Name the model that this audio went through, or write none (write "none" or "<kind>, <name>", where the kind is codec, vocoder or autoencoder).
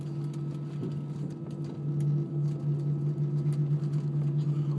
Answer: none